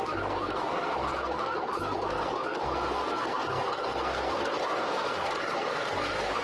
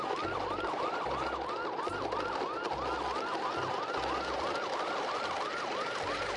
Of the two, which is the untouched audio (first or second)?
second